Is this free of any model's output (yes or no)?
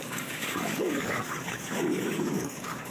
no